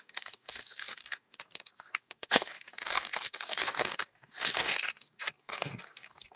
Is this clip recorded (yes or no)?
no